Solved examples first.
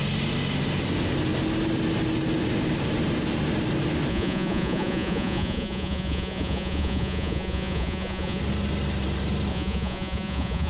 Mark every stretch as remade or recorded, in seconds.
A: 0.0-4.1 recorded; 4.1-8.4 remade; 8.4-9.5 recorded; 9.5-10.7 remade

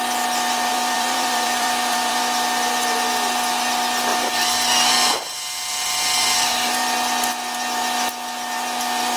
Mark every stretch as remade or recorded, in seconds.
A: 0.0-0.7 recorded; 0.7-2.2 remade; 2.2-9.2 recorded

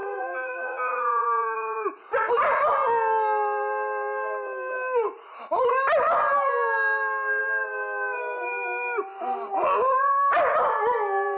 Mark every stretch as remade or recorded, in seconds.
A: 0.0-2.3 remade; 2.3-11.4 recorded

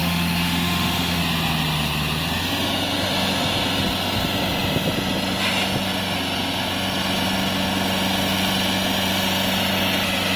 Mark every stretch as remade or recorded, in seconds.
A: 0.0-1.2 remade; 1.2-10.4 recorded

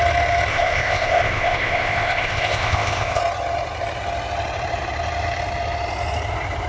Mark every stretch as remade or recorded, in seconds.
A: 0.0-0.5 recorded; 0.5-3.2 remade; 3.2-6.7 recorded

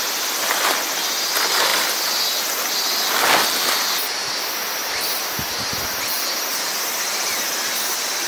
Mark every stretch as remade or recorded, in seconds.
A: 0.0-8.3 recorded